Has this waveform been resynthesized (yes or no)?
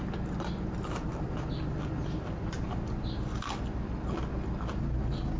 no